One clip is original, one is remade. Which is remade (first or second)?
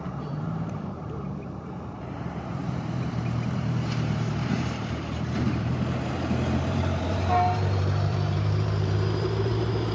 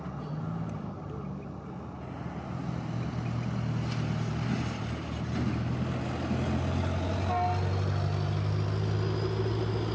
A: first